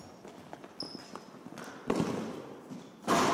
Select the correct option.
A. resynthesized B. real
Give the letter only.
B